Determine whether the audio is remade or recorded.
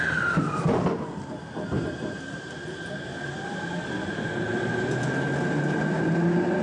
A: recorded